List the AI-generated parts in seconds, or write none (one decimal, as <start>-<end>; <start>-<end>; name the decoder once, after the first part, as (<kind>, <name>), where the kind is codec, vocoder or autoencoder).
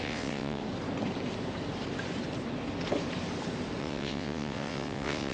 0.0-0.6 (vocoder, WaveNeXt); 3.8-5.3